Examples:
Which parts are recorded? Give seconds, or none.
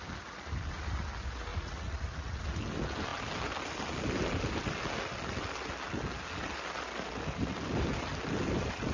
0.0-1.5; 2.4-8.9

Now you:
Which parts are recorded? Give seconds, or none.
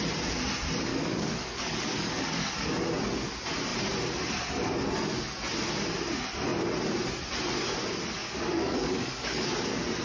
0.0-0.9; 2.7-8.2; 9.4-10.0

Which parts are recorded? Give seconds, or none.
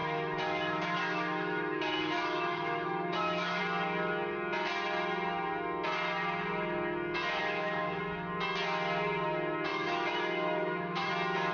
3.6-7.4; 8.0-9.7; 11.1-11.5